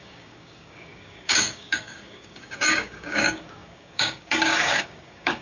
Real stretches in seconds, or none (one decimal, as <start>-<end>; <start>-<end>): none